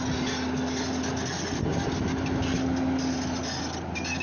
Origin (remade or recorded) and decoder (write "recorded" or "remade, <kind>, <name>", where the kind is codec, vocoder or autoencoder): recorded